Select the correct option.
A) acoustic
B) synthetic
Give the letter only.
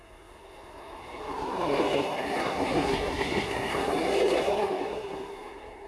B